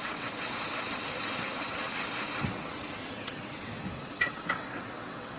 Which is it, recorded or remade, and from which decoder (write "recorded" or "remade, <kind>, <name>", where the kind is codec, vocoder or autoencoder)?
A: remade, vocoder, WaveNeXt